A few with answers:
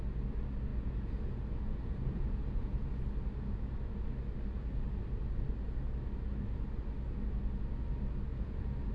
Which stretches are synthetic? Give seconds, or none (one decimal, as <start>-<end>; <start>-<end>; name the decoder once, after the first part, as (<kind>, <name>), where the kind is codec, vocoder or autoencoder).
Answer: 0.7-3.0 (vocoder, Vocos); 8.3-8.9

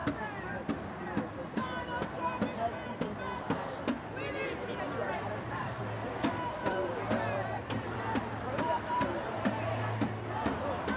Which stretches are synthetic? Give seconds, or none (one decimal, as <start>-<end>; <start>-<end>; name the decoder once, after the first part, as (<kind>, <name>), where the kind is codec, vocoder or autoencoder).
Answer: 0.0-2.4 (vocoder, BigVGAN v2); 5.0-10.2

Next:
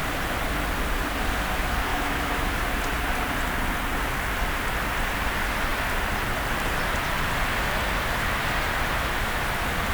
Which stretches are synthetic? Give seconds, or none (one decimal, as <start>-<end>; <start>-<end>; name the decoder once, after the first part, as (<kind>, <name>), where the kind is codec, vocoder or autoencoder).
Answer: 1.9-2.5 (autoencoder, DAC-VAE)